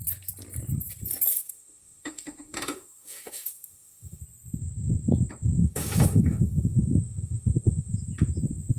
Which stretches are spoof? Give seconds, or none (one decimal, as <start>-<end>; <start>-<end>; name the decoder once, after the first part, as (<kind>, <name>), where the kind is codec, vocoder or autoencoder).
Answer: 1.3-4.2 (autoencoder, DAC-VAE); 5.6-7.9